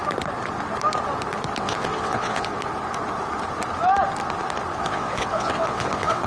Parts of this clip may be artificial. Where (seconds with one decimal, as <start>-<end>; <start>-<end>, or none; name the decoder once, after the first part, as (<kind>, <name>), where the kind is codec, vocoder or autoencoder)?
1.6-2.5 (vocoder, WaveNeXt); 4.8-6.3